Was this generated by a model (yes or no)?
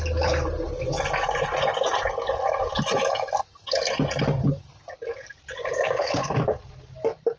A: no